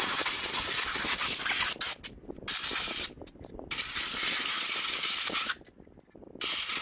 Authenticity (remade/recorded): remade